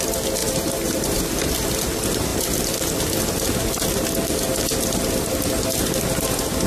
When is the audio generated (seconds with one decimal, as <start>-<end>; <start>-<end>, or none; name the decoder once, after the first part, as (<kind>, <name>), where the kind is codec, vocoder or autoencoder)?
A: 0.4-1.2 (vocoder, BigVGAN v2)